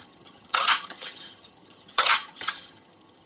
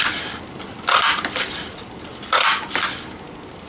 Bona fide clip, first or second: second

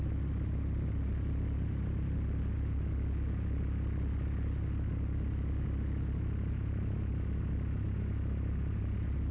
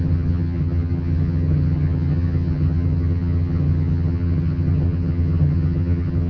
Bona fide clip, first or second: first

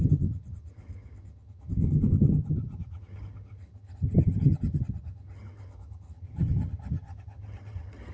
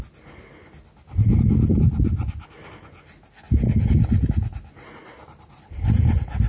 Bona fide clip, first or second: second